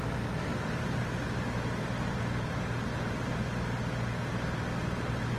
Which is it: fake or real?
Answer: real